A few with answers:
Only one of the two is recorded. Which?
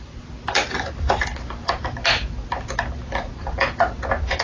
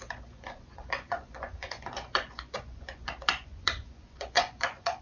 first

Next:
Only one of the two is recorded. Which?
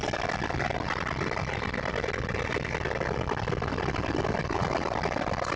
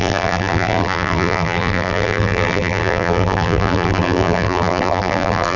first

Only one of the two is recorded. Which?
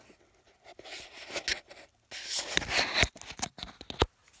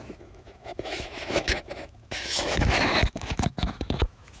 first